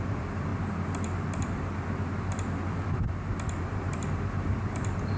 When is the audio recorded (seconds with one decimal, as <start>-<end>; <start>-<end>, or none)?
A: 0.5-3.6